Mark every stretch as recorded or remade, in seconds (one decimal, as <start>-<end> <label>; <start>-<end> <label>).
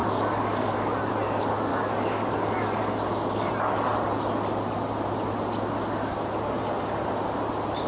0.0-1.1 remade; 1.1-1.7 recorded; 1.7-3.5 remade; 3.5-7.9 recorded